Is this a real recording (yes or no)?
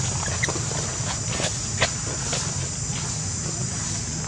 yes